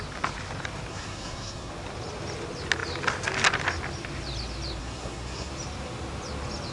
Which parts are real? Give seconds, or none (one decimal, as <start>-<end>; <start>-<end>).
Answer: 0.0-0.9; 1.7-4.8; 5.5-6.7